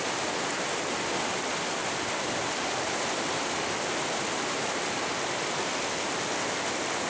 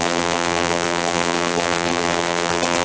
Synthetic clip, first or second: second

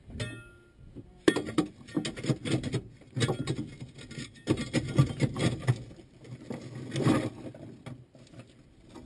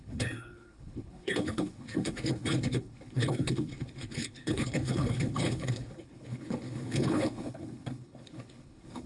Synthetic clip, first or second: second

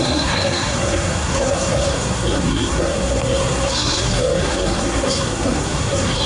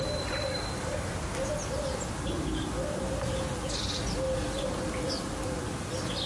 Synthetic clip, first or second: first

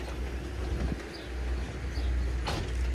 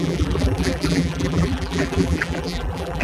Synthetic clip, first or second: second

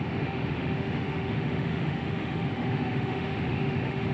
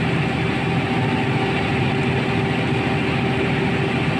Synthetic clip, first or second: first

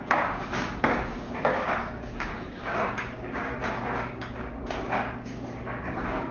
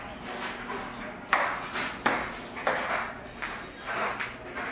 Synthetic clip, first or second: first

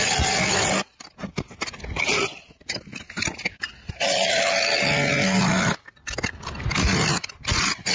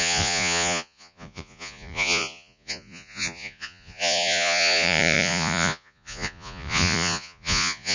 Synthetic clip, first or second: second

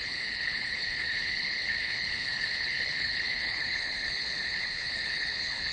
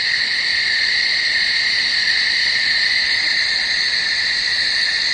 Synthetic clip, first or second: first